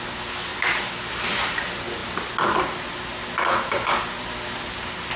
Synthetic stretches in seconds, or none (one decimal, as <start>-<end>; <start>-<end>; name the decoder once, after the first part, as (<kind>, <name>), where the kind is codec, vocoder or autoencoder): none